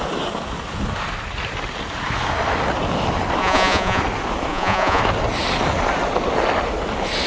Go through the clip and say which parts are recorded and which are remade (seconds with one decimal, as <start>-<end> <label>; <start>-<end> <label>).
0.0-3.4 recorded; 3.4-4.0 remade; 4.0-4.5 recorded; 4.5-5.0 remade; 5.0-7.3 recorded